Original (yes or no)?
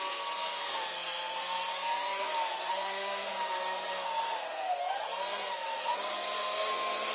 no